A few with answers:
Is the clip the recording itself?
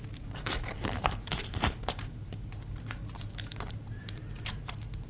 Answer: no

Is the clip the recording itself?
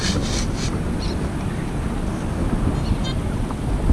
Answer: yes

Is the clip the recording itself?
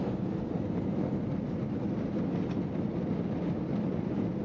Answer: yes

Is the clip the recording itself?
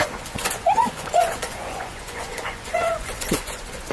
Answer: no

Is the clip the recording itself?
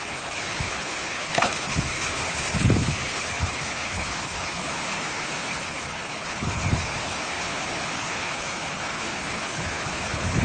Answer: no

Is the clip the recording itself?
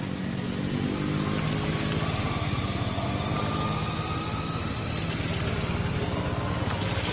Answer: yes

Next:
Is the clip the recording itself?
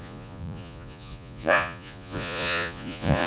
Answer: no